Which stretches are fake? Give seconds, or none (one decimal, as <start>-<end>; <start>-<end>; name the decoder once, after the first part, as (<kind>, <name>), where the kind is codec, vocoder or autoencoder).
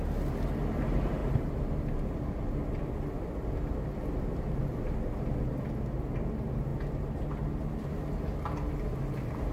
none